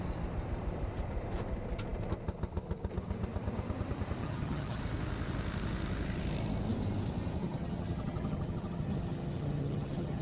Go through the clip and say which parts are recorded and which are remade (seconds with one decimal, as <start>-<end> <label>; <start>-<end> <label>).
0.0-4.2 recorded; 4.2-4.8 remade; 4.8-7.4 recorded; 7.4-10.2 remade